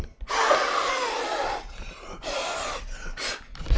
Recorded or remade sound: recorded